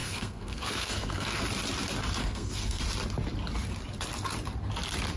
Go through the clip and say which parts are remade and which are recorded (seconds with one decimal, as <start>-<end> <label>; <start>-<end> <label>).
0.0-1.4 remade; 1.4-2.2 recorded; 2.2-2.8 remade; 2.8-5.2 recorded